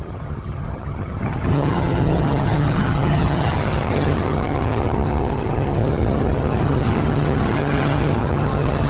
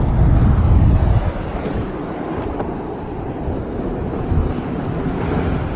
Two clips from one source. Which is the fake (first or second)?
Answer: first